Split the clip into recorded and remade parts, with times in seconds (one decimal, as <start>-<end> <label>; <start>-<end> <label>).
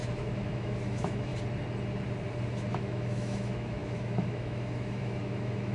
0.0-1.3 remade; 1.3-2.7 recorded; 2.7-5.7 remade